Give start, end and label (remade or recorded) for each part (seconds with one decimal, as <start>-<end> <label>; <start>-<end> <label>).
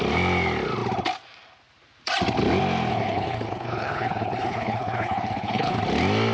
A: 0.0-2.9 recorded; 2.9-5.8 remade; 5.8-6.3 recorded